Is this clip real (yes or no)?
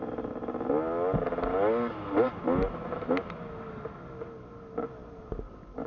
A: yes